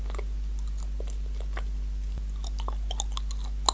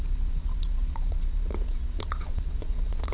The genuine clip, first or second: first